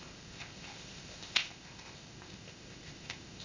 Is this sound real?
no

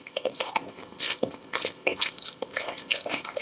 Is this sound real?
no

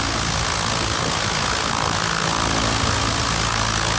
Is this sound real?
yes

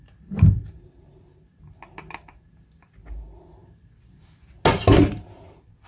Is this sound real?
yes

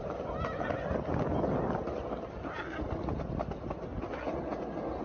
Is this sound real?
yes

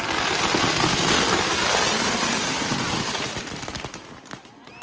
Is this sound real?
yes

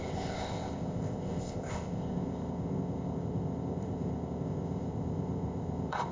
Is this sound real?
no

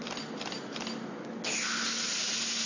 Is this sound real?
yes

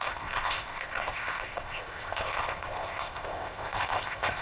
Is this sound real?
no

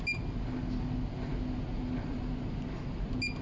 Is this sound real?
yes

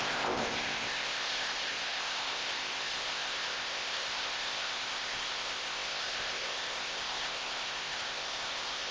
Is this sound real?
no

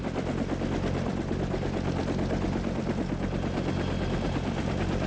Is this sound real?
yes